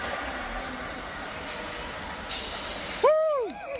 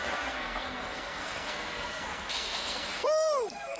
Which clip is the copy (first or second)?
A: second